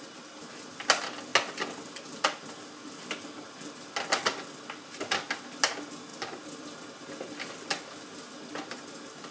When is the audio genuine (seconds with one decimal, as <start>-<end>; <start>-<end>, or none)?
0.0-9.3